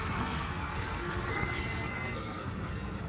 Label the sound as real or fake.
fake